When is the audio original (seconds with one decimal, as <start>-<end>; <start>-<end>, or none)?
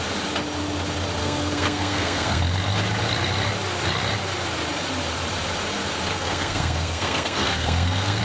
0.0-1.2; 2.4-6.1